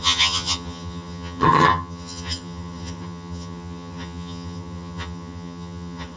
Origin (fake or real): fake